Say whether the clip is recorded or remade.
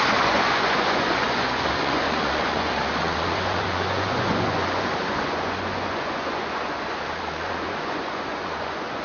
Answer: remade